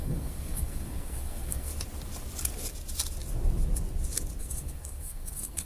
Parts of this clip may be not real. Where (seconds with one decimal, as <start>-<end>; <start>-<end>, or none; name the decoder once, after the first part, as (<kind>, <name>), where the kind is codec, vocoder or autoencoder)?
0.0-1.7 (codec, SNAC); 4.4-5.7